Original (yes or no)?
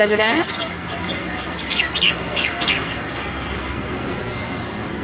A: no